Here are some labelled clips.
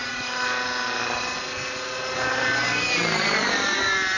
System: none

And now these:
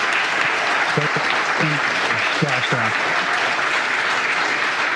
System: none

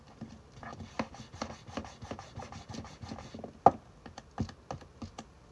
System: none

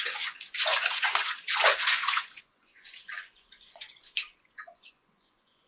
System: vocoder, Vocos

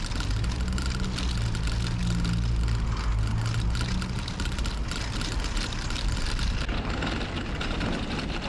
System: none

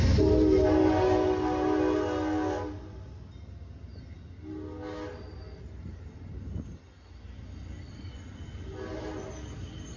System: none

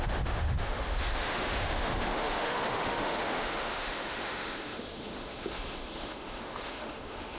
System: autoencoder, DAC-VAE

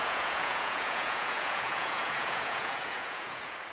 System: vocoder, Vocos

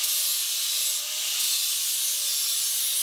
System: none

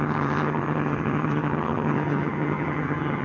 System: vocoder, HiFi-GAN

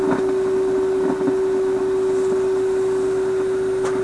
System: none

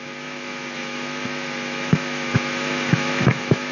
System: autoencoder, DAC-VAE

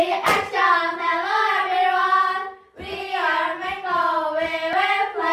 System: none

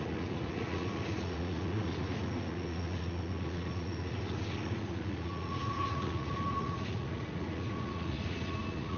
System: vocoder, Vocos